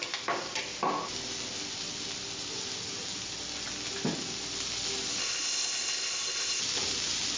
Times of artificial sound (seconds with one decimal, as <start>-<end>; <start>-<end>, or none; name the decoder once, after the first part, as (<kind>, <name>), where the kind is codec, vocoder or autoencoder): 5.2-6.6 (codec, ZipCodec)